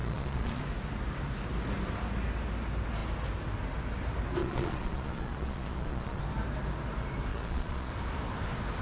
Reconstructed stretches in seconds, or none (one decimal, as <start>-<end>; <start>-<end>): 0.0-0.6; 4.4-6.2; 7.3-7.9